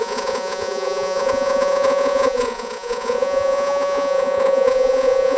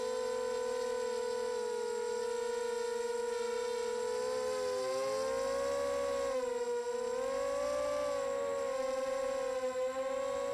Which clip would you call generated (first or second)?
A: first